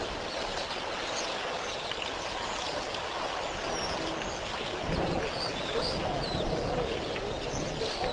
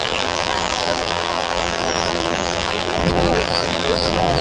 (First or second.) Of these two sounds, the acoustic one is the first